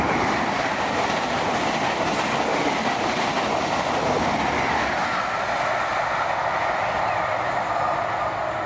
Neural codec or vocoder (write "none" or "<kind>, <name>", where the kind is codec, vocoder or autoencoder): none